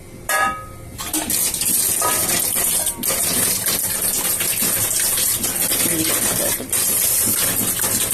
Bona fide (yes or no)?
yes